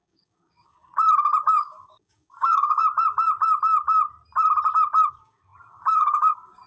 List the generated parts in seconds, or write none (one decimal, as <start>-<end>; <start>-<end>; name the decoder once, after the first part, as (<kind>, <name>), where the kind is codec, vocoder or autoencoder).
0.0-0.9 (codec, DAC); 1.5-2.8; 5.1-6.7